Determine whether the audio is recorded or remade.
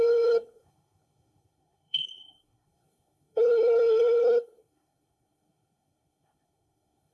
remade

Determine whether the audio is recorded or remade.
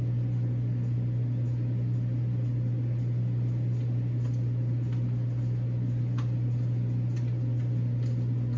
recorded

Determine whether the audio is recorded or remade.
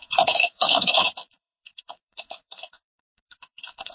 remade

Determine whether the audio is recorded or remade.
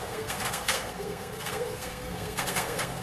remade